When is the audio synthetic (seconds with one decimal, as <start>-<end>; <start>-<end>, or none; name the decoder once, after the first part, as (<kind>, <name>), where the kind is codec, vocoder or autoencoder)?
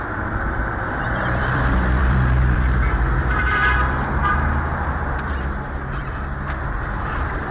0.0-3.6 (vocoder, BigVGAN v2); 6.1-7.5